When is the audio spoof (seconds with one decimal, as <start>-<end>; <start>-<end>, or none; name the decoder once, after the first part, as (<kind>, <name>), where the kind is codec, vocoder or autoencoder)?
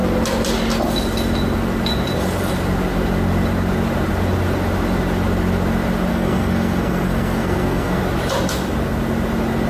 6.1-8.0 (codec, SNAC)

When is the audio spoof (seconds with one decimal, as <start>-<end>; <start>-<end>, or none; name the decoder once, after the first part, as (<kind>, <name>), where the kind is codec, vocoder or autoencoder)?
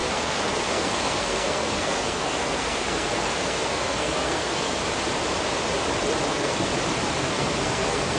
0.0-4.8 (codec, SNAC); 6.3-6.7; 7.2-8.2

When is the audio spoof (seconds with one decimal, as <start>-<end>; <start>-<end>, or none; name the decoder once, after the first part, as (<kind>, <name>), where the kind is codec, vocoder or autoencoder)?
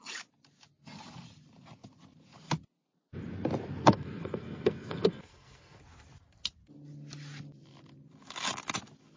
3.8-5.8 (codec, SNAC)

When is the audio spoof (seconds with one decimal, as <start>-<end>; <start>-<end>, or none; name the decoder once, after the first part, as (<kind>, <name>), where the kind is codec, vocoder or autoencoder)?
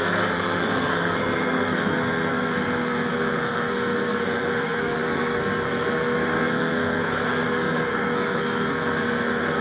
0.0-9.6 (codec, SNAC)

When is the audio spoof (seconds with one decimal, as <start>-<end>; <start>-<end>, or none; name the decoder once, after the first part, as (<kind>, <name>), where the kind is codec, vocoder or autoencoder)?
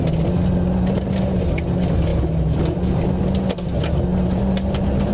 none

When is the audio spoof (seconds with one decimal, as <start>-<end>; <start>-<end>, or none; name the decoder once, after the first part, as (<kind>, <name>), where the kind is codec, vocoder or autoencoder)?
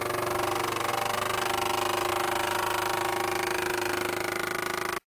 none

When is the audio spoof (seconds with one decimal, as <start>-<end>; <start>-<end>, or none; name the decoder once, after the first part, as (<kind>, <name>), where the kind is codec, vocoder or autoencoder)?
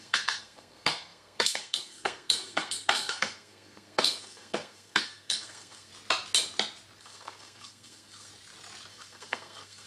0.0-5.9 (codec, SNAC); 7.0-8.3; 8.9-9.9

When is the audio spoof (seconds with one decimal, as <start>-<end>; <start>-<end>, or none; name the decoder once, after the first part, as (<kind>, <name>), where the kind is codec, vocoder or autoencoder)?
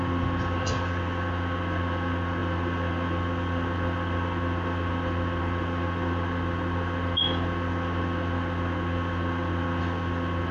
none